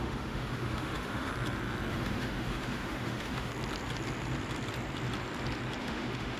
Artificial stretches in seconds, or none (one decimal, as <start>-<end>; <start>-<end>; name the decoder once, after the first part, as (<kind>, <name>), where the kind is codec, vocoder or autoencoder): 0.0-1.3 (autoencoder, DAC-VAE); 1.9-3.5; 5.8-6.4